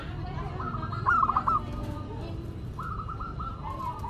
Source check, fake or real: real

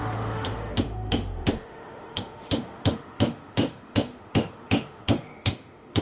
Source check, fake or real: fake